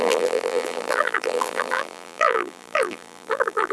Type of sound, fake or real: fake